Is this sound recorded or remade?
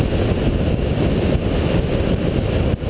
recorded